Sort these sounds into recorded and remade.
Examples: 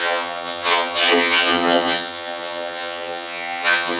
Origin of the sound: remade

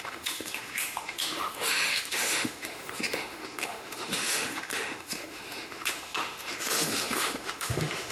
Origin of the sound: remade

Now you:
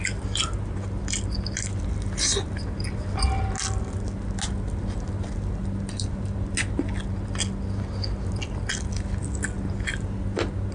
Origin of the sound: recorded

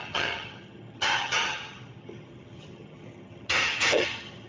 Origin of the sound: remade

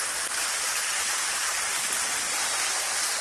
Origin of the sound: recorded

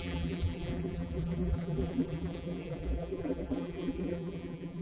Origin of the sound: remade